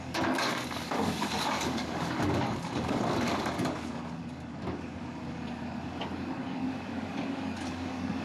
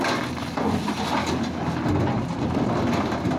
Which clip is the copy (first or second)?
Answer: first